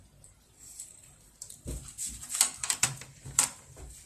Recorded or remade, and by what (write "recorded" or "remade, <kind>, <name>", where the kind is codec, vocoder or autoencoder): remade, vocoder, BigVGAN v2